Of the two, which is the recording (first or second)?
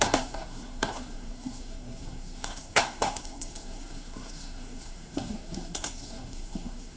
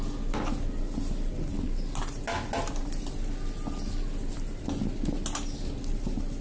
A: second